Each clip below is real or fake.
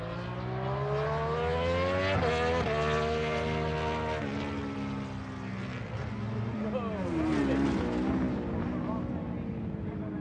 real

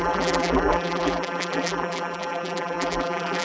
fake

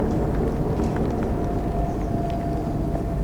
real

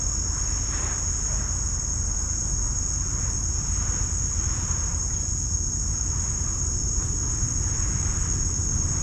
real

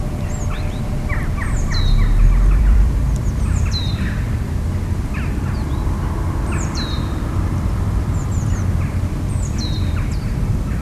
fake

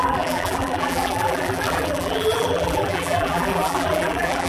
fake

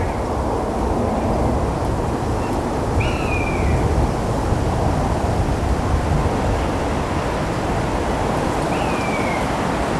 real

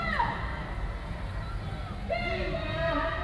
real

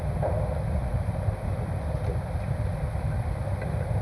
fake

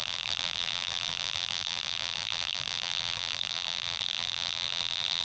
fake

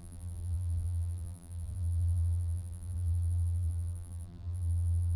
fake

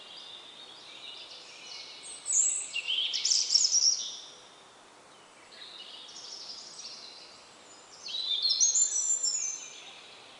real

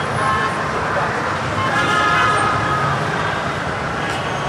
fake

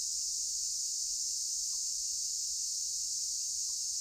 fake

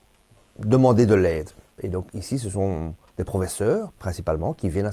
real